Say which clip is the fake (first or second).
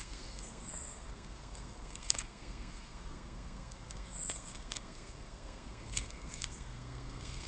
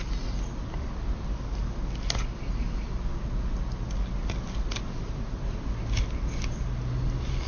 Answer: first